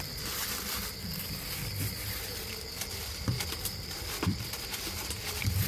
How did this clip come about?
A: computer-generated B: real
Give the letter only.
A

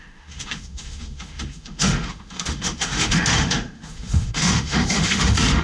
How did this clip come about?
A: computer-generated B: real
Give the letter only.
A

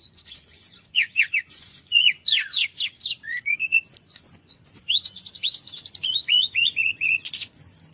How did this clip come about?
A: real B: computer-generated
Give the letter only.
B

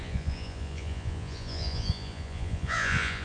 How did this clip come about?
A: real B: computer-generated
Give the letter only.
B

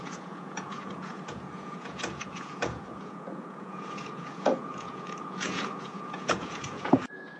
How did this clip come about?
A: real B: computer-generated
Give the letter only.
B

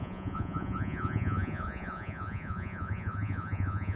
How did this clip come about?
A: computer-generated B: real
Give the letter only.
A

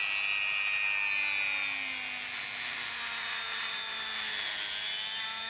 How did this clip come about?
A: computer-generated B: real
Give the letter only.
B